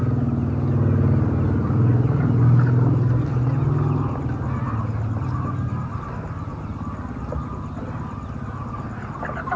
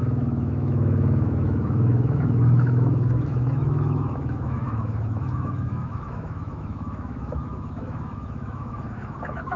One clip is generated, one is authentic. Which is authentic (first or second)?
first